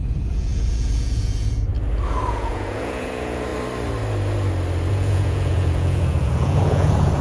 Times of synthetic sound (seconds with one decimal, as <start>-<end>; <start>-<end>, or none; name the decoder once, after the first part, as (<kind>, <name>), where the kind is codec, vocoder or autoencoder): 0.0-1.7 (vocoder, Vocos); 2.3-3.5; 4.9-7.2